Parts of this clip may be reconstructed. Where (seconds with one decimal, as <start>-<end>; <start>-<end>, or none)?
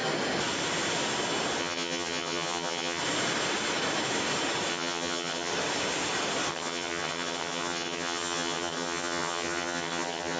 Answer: 1.6-3.0; 4.7-5.5; 6.5-10.4